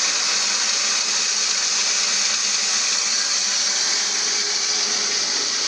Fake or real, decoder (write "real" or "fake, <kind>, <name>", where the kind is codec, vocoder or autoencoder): real